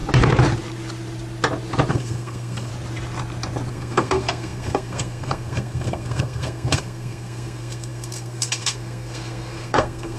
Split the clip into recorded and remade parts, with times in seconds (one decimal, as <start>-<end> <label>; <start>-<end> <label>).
0.0-1.9 recorded; 1.9-2.7 remade; 2.7-3.7 recorded; 3.7-10.2 remade